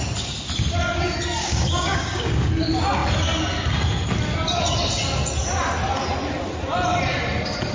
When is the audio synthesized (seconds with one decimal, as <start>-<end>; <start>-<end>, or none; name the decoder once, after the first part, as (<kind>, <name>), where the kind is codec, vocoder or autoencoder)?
1.4-2.5 (codec, DAC)